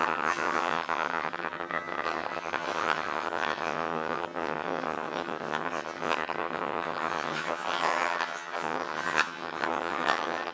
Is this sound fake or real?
fake